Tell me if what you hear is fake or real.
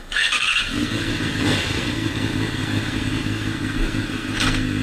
fake